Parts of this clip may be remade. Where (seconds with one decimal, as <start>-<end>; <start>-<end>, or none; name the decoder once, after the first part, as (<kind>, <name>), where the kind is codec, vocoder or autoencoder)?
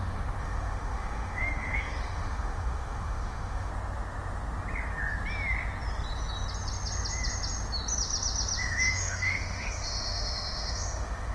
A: 0.0-3.7 (autoencoder, DAC-VAE); 8.6-11.3